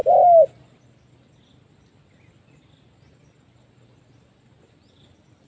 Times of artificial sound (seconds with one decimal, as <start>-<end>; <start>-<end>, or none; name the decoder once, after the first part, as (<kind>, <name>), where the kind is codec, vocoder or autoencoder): none